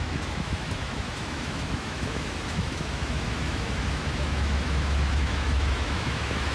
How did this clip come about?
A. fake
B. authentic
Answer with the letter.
A